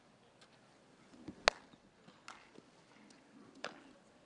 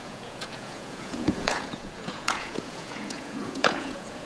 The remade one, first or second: second